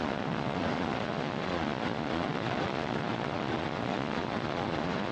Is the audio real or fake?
fake